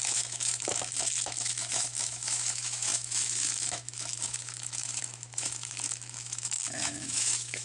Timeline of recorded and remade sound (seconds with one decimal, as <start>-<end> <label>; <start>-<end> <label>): 0.0-7.6 remade